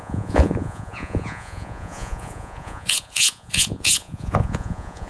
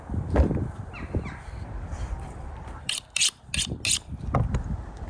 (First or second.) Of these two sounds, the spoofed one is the first